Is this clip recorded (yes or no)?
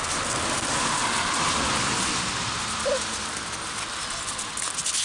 yes